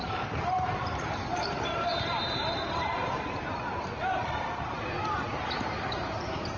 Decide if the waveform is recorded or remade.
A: remade